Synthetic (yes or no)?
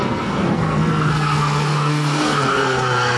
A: yes